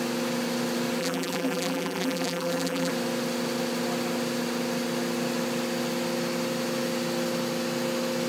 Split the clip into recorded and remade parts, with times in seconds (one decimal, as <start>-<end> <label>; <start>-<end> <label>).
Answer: 0.0-1.0 recorded; 1.0-2.9 remade; 2.9-8.3 recorded